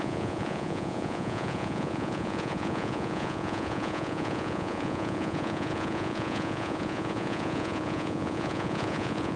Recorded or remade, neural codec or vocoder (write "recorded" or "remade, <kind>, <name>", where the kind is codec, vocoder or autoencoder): remade, vocoder, Vocos